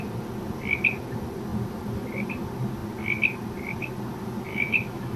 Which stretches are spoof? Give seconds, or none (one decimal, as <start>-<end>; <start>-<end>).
4.5-5.2